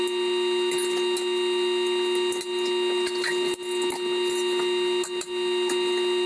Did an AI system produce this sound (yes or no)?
no